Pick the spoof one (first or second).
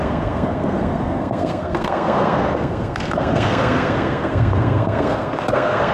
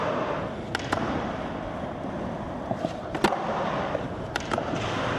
first